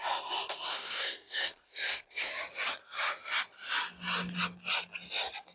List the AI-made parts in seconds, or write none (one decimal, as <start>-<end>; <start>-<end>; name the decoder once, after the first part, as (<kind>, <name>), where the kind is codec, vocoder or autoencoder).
0.7-2.3 (codec, SNAC)